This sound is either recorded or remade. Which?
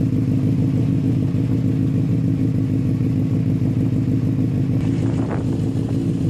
recorded